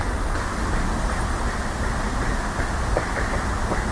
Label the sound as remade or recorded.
recorded